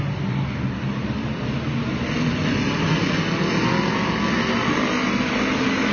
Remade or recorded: recorded